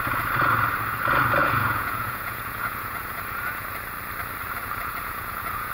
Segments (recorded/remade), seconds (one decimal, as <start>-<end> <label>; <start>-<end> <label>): 0.0-1.4 recorded; 1.4-3.8 remade; 3.8-4.6 recorded; 4.6-5.7 remade